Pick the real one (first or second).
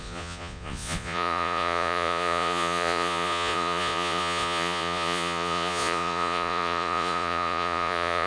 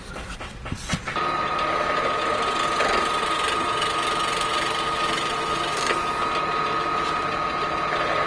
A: second